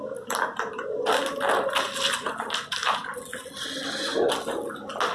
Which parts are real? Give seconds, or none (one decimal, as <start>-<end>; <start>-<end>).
0.0-5.1